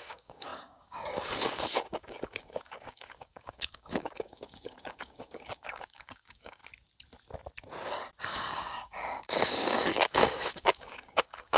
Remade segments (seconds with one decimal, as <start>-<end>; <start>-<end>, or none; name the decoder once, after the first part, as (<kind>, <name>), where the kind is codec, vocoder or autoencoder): 0.0-6.6 (codec, DAC); 8.2-11.6